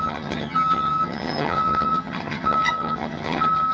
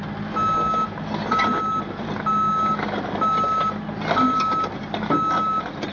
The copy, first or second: first